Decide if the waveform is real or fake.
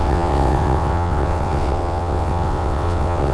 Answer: fake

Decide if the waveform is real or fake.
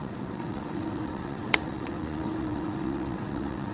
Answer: fake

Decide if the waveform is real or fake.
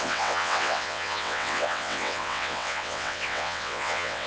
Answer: fake